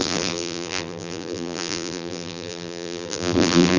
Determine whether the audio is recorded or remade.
remade